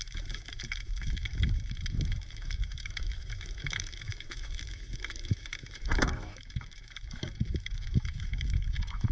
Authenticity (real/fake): fake